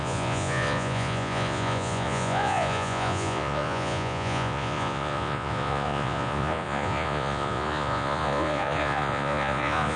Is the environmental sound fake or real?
fake